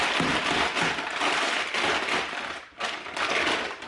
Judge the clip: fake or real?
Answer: real